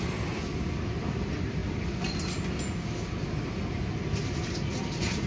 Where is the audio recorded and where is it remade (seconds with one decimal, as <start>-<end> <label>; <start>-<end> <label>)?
0.0-5.3 recorded